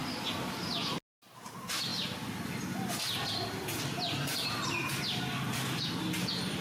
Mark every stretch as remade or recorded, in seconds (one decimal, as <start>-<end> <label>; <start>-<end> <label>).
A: 0.0-6.6 recorded